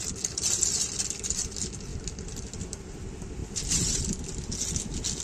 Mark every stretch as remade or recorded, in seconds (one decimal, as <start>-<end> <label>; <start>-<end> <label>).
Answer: 0.0-3.4 recorded; 3.4-4.0 remade; 4.0-5.2 recorded